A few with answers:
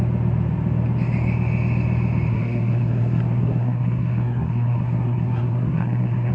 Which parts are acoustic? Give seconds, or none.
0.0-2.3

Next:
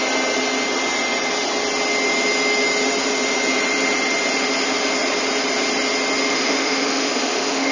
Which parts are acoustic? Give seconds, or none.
0.0-6.3

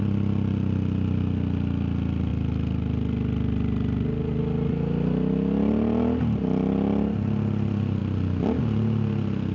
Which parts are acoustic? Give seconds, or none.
0.0-9.5

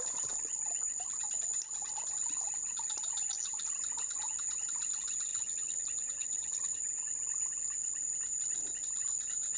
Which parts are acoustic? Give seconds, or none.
0.0-5.3; 5.8-6.2; 6.8-9.6

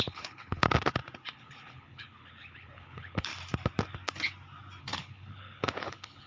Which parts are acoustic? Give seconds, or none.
0.6-1.3; 3.3-4.8

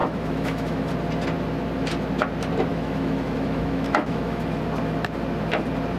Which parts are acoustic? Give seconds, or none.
0.9-2.7; 4.6-6.0

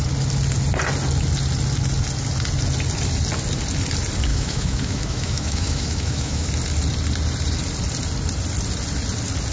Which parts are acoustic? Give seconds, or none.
0.0-4.3; 6.5-9.5